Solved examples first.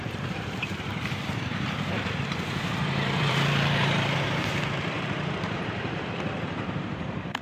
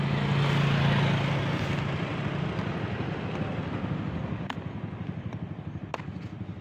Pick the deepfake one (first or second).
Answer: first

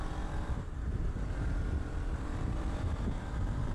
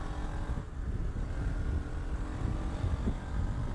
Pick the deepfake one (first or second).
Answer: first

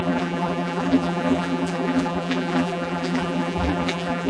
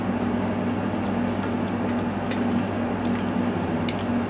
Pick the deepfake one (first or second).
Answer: first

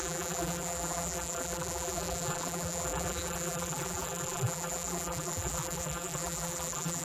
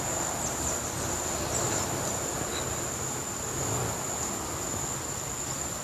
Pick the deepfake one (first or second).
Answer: first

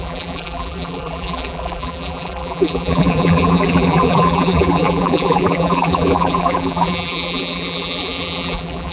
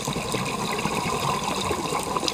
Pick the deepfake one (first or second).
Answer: first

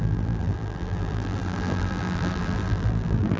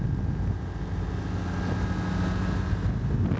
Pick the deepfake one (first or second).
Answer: first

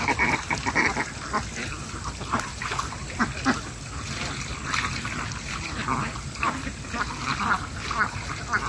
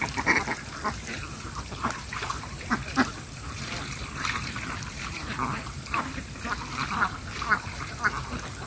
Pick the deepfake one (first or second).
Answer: second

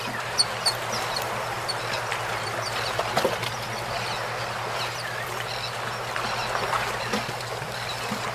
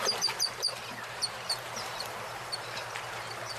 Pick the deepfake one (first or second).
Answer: second